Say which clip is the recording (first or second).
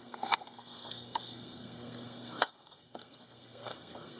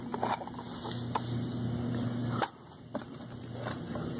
second